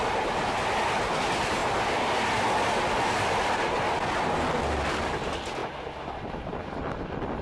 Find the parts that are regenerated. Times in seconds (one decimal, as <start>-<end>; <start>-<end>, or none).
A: none